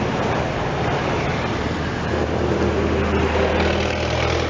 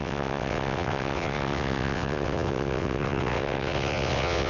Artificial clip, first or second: second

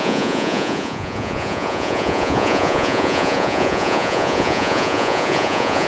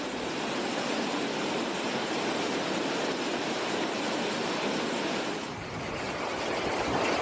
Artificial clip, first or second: first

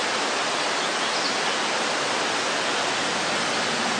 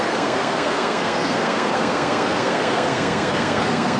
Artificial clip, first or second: second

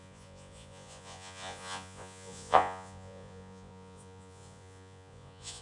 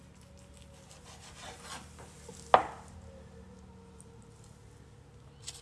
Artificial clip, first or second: first